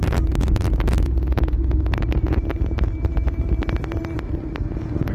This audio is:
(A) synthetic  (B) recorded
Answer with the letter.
B